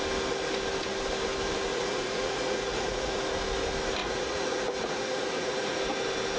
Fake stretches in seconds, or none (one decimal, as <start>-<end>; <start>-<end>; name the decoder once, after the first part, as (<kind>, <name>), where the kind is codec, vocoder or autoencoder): 1.7-3.2 (vocoder, Vocos); 4.0-5.8